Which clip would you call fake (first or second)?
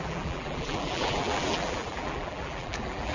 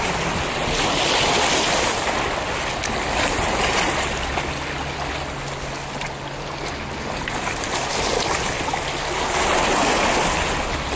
first